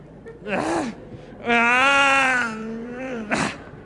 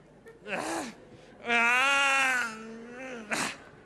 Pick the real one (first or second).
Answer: second